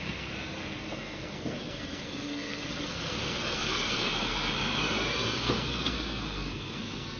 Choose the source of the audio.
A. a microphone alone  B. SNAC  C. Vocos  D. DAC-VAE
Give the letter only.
B